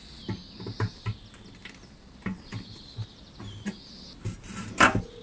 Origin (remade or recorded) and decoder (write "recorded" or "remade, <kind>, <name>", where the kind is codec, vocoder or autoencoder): recorded